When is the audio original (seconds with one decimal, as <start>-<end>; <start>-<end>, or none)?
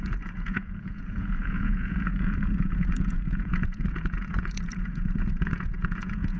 none